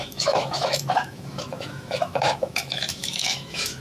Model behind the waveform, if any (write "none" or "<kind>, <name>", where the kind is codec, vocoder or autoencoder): autoencoder, DAC-VAE